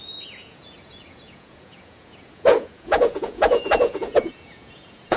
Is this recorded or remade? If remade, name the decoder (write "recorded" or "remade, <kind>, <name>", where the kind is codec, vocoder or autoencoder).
remade, vocoder, Vocos